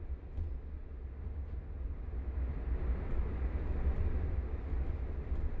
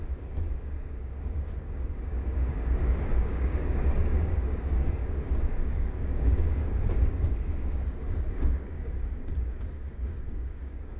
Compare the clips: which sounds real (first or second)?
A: first